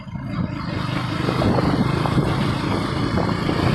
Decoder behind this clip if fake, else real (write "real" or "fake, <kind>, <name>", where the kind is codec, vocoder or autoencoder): real